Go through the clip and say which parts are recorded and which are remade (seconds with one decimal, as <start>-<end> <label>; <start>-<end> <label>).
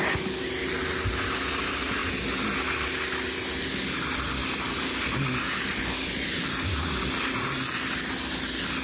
0.0-8.8 recorded